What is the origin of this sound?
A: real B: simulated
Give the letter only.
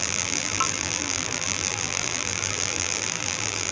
B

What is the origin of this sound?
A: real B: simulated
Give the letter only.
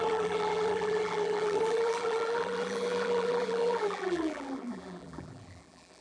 B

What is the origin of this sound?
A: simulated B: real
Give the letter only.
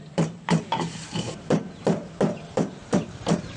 A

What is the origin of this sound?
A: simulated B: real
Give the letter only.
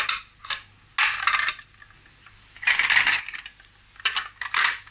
B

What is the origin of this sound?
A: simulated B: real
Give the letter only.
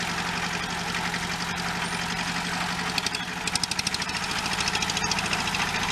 B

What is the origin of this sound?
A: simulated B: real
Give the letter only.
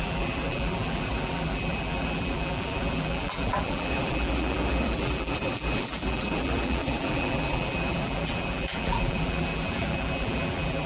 A